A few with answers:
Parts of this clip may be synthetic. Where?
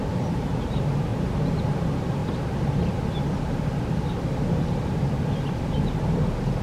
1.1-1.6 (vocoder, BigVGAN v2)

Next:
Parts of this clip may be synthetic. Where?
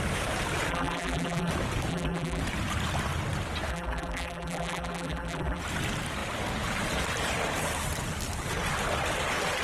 0.7-1.5 (vocoder, BigVGAN v2); 1.9-2.4; 3.7-5.6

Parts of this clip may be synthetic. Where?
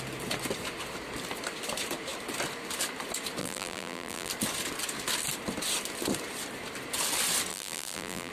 3.4-4.3 (vocoder, BigVGAN v2); 7.5-8.3